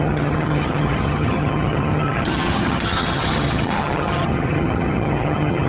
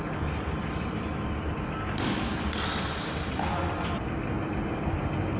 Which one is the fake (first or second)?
first